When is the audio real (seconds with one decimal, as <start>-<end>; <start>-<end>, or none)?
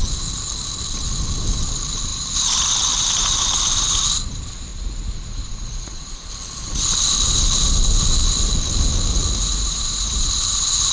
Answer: 0.0-4.7; 6.3-9.1; 10.3-10.9